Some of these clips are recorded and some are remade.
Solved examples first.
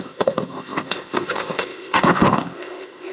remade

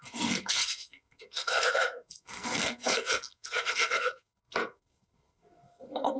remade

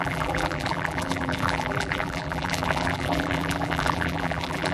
remade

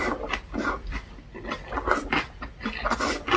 recorded